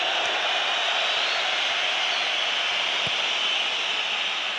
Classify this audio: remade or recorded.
recorded